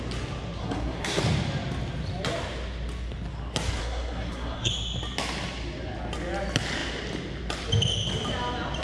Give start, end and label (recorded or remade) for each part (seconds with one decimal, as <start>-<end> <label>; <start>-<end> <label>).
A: 0.0-0.6 recorded; 0.6-1.2 remade; 1.2-3.8 recorded; 3.8-4.7 remade; 4.7-8.8 recorded